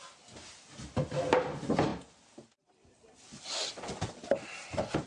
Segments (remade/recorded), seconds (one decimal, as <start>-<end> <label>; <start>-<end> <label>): 0.0-5.1 recorded